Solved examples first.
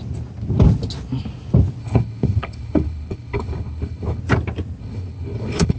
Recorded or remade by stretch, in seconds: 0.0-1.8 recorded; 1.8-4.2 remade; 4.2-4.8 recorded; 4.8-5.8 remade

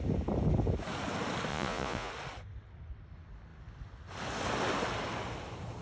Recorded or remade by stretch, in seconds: 0.0-1.5 recorded; 1.5-2.1 remade; 2.1-5.8 recorded

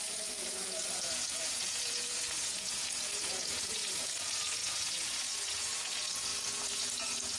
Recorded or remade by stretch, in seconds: 0.0-7.4 remade

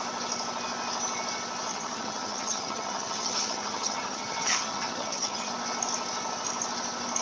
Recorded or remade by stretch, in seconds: 0.0-1.7 recorded; 1.7-5.5 remade; 5.5-7.2 recorded

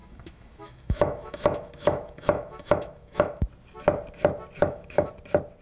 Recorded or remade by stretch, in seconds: 0.0-3.4 remade; 3.4-4.6 recorded; 4.6-5.1 remade; 5.1-5.6 recorded